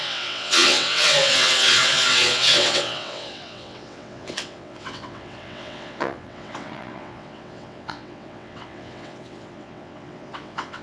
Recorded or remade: remade